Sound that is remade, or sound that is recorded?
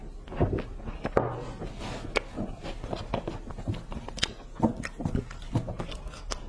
recorded